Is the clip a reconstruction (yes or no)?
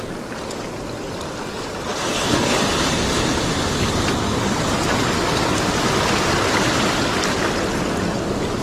no